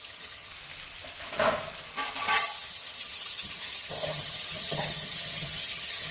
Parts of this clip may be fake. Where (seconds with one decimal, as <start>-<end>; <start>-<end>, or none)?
0.0-0.5; 2.2-6.1